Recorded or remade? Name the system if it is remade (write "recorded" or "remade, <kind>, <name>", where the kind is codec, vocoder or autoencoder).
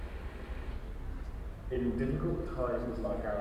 recorded